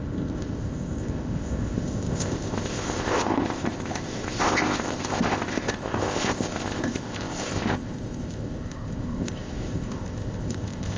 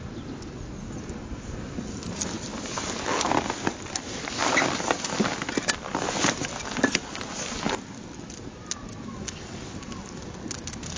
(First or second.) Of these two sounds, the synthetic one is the first